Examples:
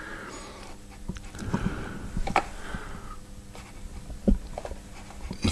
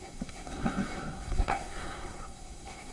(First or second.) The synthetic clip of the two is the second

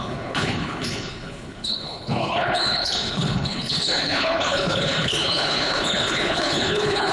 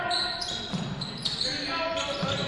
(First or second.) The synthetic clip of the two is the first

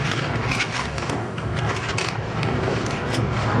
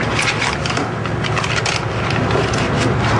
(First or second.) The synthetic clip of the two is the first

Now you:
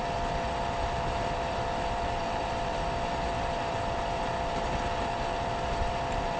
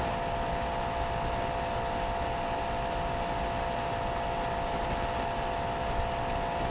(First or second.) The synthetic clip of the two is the first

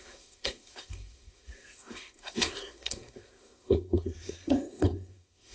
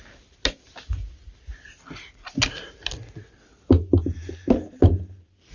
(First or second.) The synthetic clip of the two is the first